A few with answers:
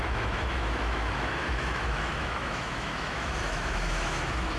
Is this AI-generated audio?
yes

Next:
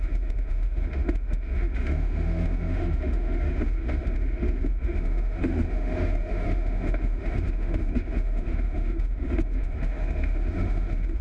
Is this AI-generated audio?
yes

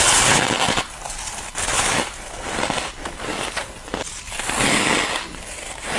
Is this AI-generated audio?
no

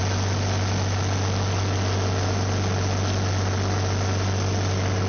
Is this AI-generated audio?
no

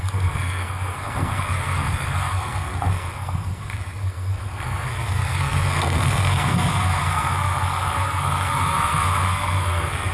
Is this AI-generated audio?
yes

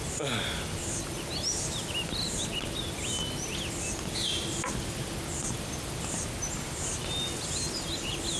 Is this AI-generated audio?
no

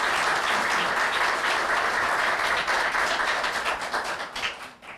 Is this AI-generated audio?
no